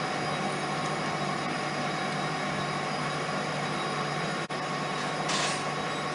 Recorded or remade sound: recorded